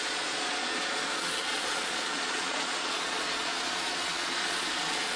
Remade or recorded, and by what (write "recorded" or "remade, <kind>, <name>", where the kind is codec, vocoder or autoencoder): remade, vocoder, Vocos